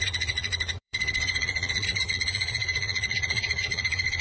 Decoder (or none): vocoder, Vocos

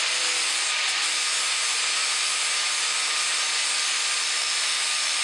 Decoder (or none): none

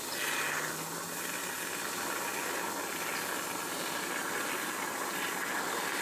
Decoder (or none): none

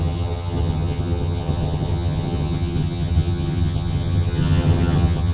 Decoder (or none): vocoder, HiFi-GAN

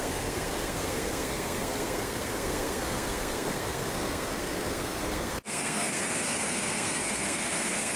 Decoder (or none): codec, SNAC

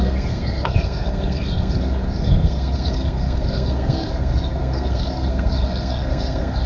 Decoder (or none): codec, SNAC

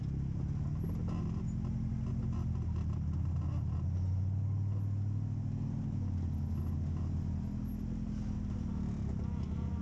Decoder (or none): none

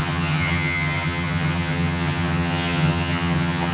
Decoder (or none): vocoder, HiFi-GAN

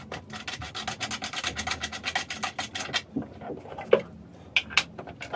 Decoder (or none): none